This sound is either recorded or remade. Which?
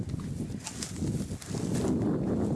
recorded